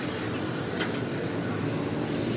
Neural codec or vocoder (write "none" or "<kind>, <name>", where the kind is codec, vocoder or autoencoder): none